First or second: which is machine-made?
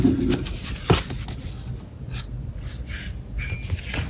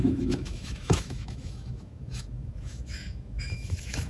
second